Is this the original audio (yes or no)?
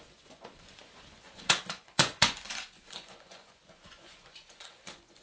no